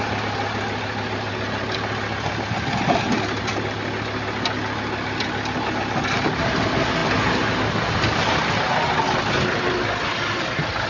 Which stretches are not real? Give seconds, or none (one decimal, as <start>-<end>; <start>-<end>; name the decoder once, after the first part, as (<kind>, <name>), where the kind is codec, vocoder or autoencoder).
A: none